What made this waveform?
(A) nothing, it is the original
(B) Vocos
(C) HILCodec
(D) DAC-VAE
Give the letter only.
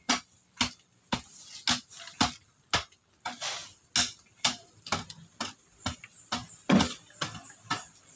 A